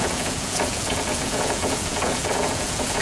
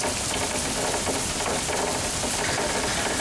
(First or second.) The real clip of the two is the second